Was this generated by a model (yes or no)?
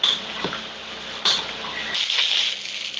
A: no